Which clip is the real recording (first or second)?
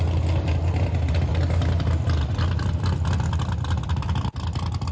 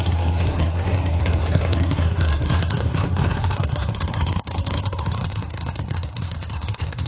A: first